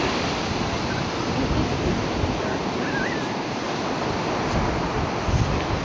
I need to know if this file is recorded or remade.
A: recorded